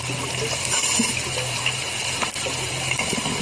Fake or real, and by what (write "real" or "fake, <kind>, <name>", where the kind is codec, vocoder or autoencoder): real